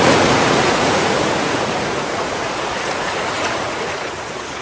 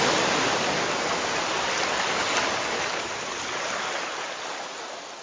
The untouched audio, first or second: second